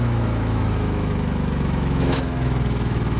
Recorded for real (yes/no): no